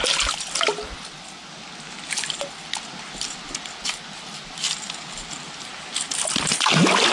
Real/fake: real